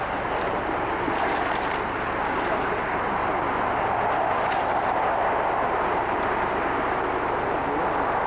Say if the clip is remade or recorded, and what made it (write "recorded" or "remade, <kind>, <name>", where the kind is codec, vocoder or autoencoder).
recorded